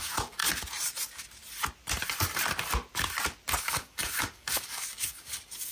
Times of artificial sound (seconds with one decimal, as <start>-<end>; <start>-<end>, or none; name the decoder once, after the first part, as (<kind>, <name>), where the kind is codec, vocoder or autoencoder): 0.0-0.4 (codec, DAC); 3.6-5.7